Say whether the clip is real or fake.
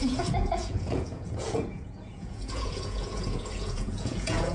fake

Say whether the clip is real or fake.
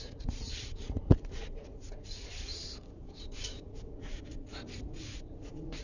fake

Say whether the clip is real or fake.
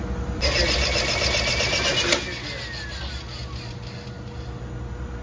real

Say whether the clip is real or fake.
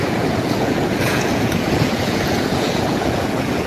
fake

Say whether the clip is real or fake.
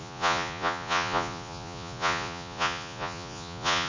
fake